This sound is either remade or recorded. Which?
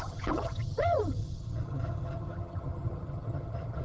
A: remade